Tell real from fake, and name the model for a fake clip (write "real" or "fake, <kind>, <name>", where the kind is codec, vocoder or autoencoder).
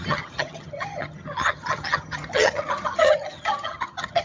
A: fake, vocoder, HiFi-GAN